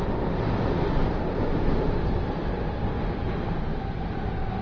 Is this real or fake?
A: real